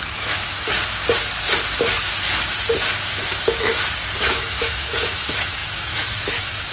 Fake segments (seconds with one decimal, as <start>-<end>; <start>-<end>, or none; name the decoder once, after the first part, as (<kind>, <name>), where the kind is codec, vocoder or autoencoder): 0.0-1.0 (autoencoder, DAC-VAE); 3.0-3.7; 4.3-6.7